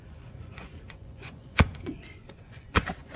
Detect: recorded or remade remade